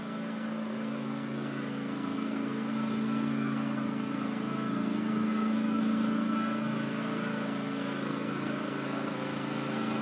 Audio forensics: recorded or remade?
remade